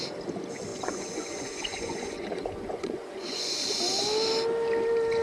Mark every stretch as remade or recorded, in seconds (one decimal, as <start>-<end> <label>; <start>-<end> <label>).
0.0-0.7 recorded; 0.7-3.8 remade; 3.8-5.2 recorded

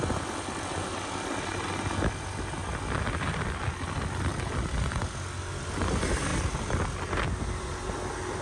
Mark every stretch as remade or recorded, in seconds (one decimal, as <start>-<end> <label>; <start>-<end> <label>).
0.0-8.4 recorded

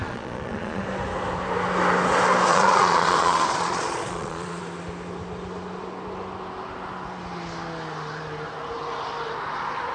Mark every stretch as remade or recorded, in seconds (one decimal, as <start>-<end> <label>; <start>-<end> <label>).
0.0-0.8 remade; 0.8-2.5 recorded; 2.5-4.6 remade; 4.6-9.9 recorded

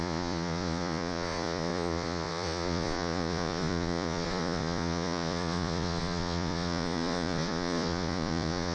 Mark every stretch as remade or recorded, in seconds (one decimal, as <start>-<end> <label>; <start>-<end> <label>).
0.0-8.7 remade